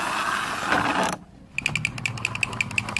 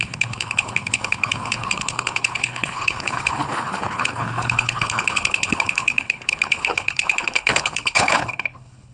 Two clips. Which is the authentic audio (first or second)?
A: first